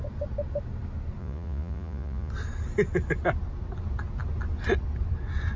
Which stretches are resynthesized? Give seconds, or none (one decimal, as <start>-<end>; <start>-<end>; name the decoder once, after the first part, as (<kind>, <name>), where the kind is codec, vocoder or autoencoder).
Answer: 1.2-2.3 (vocoder, Vocos)